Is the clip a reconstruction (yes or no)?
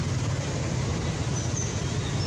no